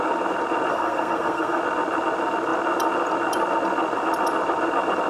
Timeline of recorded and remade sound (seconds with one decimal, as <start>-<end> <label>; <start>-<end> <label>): 0.0-0.7 recorded; 0.7-1.6 remade; 1.6-5.1 recorded